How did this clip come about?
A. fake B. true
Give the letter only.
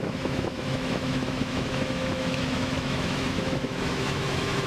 A